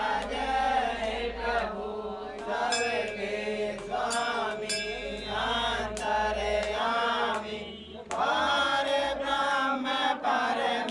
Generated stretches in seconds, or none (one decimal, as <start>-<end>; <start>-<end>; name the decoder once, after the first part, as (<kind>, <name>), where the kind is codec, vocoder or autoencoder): none